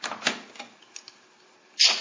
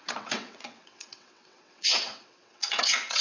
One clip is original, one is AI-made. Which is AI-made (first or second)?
second